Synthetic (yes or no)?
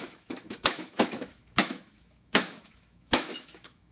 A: yes